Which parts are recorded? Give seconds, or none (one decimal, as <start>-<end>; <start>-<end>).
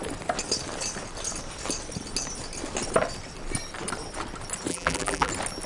0.0-4.7; 5.3-5.7